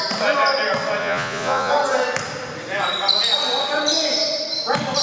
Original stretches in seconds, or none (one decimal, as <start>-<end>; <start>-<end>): 0.0-1.0; 1.7-5.0